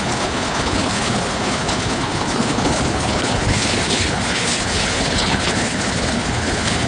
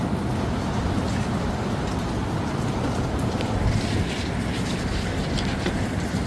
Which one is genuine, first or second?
second